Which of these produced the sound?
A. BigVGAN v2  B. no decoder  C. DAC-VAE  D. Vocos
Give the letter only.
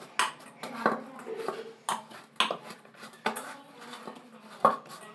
B